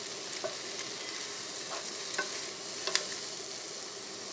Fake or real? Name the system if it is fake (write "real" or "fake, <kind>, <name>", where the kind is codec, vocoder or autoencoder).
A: real